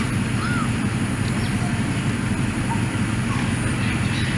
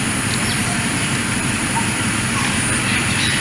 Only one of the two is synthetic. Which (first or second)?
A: second